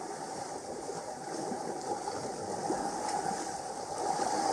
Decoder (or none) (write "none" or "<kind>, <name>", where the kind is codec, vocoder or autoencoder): none